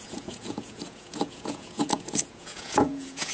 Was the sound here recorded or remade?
remade